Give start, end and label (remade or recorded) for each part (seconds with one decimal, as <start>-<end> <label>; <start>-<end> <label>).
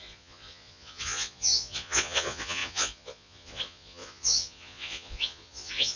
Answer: 0.0-6.0 remade